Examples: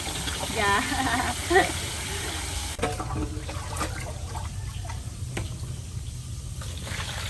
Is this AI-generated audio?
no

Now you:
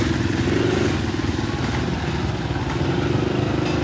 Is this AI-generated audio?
no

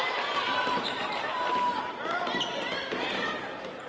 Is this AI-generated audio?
yes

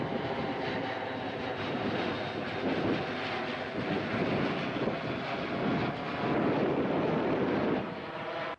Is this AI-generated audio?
yes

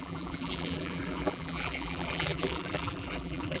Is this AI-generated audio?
yes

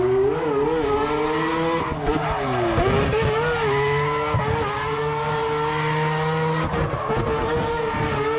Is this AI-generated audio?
no